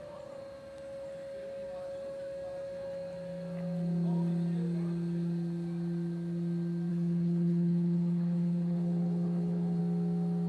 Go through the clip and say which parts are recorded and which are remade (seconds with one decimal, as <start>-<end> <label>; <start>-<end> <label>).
0.0-6.9 recorded; 6.9-9.8 remade; 9.8-10.5 recorded